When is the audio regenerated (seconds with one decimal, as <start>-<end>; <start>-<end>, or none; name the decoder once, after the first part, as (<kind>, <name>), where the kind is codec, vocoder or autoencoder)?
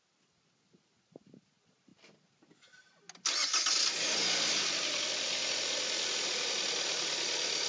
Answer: none